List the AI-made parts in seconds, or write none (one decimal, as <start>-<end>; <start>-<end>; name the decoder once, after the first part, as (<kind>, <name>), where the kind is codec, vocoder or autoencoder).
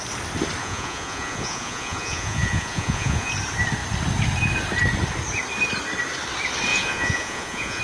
0.6-3.3 (vocoder, Vocos); 6.7-7.8